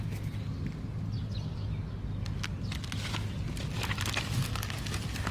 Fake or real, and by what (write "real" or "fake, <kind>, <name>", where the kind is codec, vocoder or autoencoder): real